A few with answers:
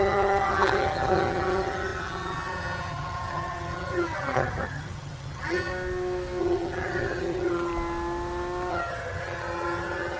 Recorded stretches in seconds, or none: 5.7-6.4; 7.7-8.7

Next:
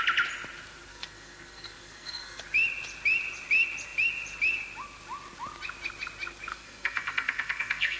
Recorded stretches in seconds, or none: 0.0-0.9; 2.4-6.5

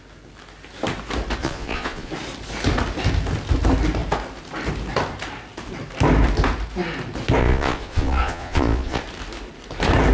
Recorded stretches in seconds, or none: 0.0-1.4; 2.1-7.4; 9.0-10.1

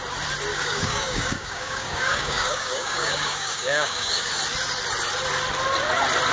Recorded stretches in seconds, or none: 0.0-0.5; 4.3-6.3